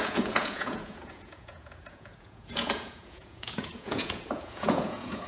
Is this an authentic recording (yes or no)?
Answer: no